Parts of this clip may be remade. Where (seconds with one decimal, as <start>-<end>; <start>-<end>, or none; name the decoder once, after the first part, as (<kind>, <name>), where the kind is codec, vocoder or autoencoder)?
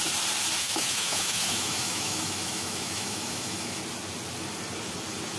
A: 0.6-3.8 (autoencoder, DAC-VAE)